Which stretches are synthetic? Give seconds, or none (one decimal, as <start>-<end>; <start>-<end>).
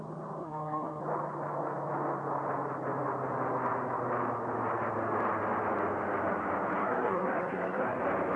0.4-1.0; 6.8-8.0